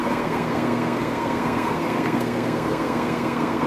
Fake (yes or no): yes